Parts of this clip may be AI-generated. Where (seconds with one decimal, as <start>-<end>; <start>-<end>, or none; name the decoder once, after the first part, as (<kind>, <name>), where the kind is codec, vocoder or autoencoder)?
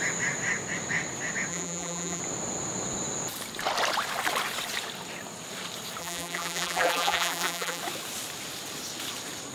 1.5-2.2 (vocoder, BigVGAN v2); 6.0-7.8